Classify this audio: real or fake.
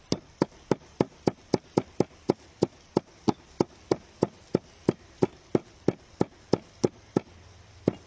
real